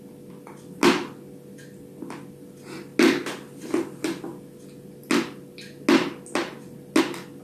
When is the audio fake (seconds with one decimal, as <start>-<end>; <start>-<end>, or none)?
none